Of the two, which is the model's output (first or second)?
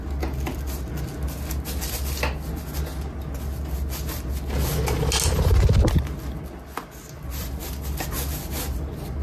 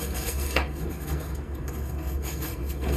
second